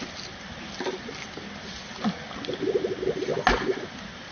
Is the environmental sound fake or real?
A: real